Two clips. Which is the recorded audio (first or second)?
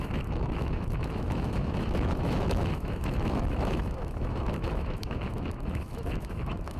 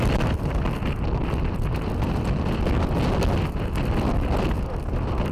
second